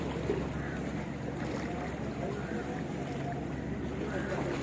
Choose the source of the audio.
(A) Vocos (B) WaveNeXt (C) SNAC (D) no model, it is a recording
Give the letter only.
D